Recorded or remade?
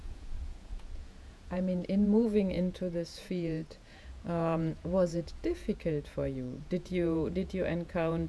remade